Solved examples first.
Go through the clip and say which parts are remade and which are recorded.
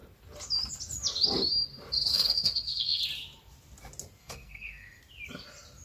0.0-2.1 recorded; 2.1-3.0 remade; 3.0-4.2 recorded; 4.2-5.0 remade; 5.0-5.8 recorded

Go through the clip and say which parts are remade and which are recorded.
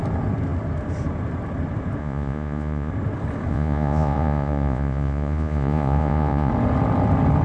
0.0-2.0 recorded; 2.0-2.9 remade; 2.9-3.5 recorded; 3.5-6.5 remade; 6.5-7.4 recorded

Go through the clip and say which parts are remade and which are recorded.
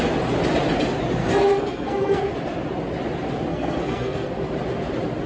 0.0-1.2 recorded; 1.2-2.3 remade; 2.3-3.5 recorded; 3.5-4.3 remade; 4.3-5.3 recorded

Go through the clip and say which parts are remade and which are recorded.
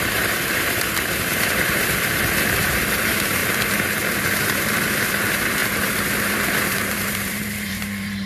0.0-3.4 remade; 3.4-4.4 recorded; 4.4-8.3 remade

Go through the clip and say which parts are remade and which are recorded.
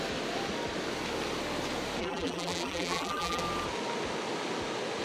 0.0-2.0 recorded; 2.0-3.4 remade; 3.4-5.0 recorded